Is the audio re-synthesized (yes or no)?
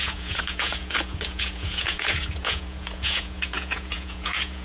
yes